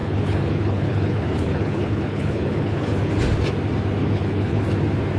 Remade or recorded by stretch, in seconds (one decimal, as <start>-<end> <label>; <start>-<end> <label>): 0.0-3.1 remade; 3.1-4.0 recorded; 4.0-4.6 remade; 4.6-5.2 recorded

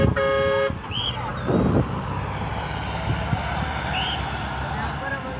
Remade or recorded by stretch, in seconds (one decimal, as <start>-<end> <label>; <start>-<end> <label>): 0.0-5.4 recorded

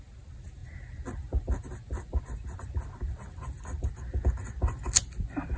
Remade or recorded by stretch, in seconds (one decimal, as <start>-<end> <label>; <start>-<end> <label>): 0.0-5.6 recorded

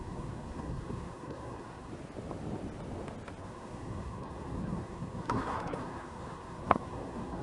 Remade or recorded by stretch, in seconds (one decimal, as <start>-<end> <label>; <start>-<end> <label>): 0.0-1.9 remade; 1.9-3.4 recorded; 3.4-7.4 remade

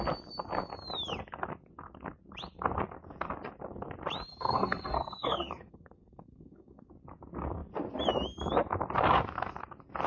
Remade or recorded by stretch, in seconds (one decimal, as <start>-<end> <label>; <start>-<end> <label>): 0.0-4.3 recorded; 4.3-6.9 remade; 6.9-10.1 recorded

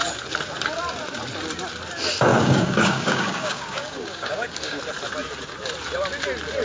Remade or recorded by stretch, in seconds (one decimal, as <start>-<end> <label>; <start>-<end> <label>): 0.0-2.3 recorded; 2.3-4.8 remade; 4.8-6.6 recorded